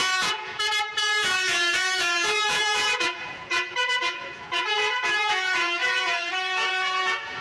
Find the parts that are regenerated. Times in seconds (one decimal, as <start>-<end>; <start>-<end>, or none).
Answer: 0.0-7.4

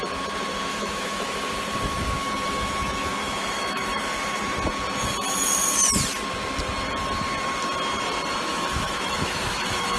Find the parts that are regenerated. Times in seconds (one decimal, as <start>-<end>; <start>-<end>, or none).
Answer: 0.7-4.4; 8.5-10.0

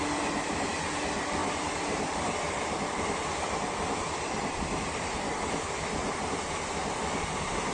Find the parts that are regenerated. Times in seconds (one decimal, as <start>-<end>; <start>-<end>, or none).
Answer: 1.4-5.7

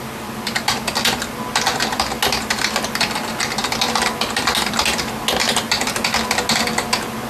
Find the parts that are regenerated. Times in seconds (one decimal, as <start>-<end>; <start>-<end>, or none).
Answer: none